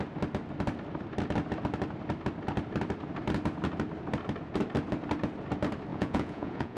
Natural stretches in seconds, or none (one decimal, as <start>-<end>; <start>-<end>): 0.0-5.9